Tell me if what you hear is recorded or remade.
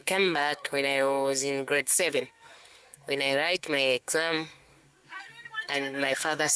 remade